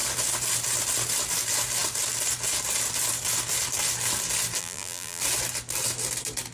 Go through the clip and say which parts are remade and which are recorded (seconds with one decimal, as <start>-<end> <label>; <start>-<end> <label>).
0.0-4.6 recorded; 4.6-5.2 remade; 5.2-6.5 recorded

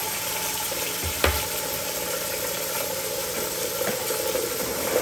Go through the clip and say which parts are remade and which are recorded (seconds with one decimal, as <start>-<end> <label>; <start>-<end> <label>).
0.0-5.0 recorded

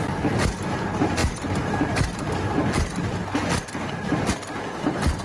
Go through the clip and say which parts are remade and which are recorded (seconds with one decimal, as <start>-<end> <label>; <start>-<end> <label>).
0.0-5.2 recorded